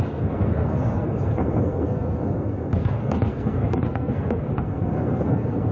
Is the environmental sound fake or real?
fake